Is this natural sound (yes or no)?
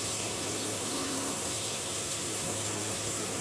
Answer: no